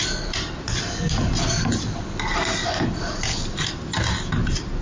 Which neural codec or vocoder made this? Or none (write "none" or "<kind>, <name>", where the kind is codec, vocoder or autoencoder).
none